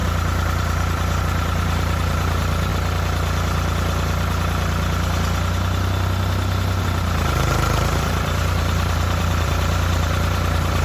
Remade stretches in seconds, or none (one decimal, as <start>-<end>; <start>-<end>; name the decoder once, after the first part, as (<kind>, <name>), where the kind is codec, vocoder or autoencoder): 0.0-2.7 (vocoder, BigVGAN v2); 6.8-10.8